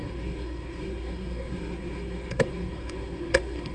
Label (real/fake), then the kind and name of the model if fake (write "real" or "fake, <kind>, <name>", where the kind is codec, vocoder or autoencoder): fake, codec, SNAC